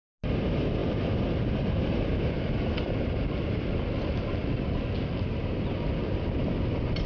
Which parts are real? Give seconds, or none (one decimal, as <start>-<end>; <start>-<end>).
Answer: 0.0-7.1